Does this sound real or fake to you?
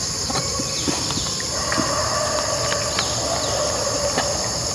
real